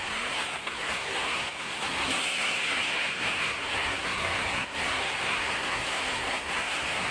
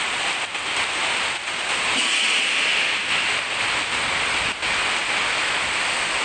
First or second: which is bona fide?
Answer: second